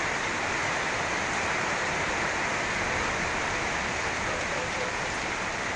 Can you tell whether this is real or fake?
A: real